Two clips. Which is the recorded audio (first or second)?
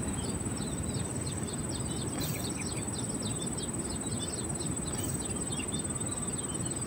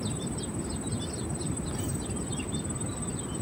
first